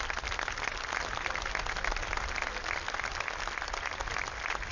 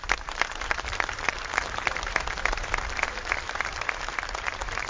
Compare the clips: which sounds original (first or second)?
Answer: first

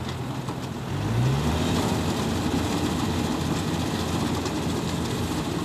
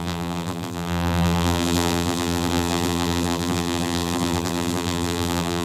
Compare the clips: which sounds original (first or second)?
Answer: first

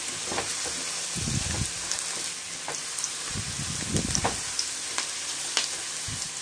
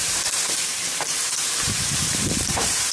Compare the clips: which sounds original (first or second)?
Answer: first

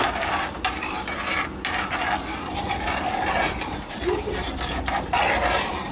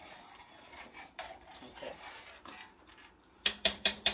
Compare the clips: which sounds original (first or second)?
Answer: first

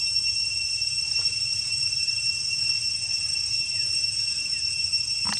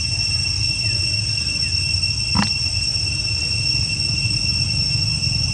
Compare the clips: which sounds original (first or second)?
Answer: second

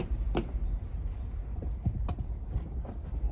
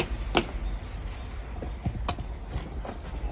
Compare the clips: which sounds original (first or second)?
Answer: second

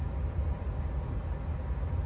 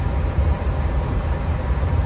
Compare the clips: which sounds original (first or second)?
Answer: first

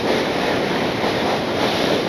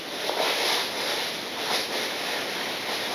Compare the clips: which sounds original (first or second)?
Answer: second